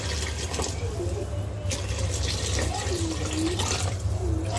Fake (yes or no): no